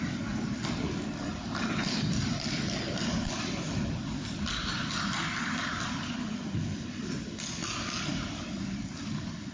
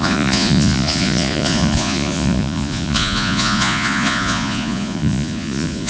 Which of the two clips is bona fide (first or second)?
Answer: first